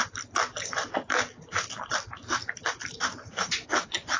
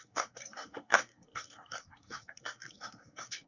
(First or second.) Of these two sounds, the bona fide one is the first